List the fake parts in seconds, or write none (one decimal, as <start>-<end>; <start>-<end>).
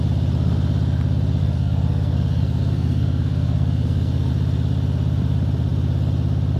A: 1.4-4.3